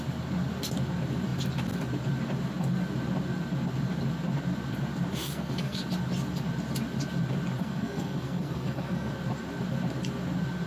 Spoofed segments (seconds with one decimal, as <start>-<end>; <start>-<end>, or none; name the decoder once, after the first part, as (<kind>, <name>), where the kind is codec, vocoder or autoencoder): 5.2-5.8 (codec, SNAC); 7.6-9.1